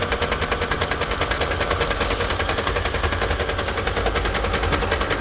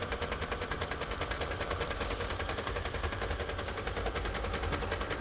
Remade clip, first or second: second